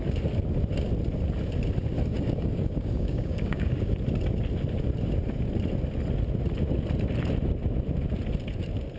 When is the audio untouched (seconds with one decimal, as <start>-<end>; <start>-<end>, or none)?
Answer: 0.0-2.1; 3.9-9.0